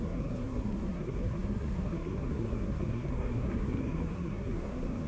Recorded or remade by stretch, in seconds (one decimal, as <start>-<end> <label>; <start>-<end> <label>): 0.0-5.1 remade

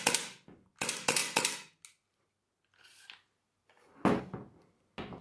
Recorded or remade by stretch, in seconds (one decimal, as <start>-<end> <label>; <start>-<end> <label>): 0.0-5.2 recorded